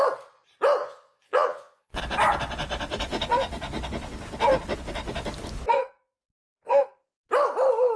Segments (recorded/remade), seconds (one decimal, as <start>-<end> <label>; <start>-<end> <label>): 0.0-0.8 recorded; 0.8-2.0 remade; 2.0-8.0 recorded